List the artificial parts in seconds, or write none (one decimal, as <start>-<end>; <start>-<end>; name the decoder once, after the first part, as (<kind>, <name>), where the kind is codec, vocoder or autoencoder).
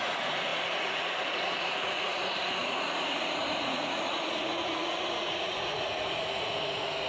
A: 0.0-7.1 (vocoder, Vocos)